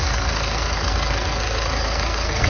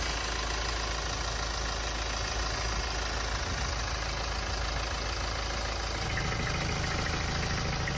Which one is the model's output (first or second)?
first